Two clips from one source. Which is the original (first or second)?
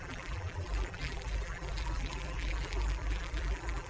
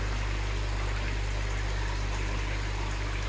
second